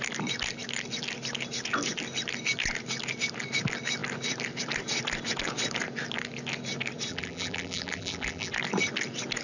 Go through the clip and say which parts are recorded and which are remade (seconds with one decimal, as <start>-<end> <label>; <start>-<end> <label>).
0.0-7.1 recorded; 7.1-8.5 remade; 8.5-9.4 recorded